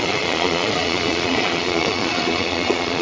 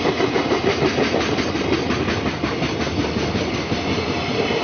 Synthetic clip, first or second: first